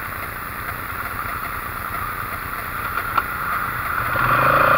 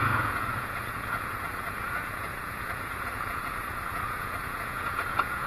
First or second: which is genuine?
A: first